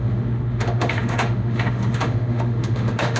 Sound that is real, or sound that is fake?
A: fake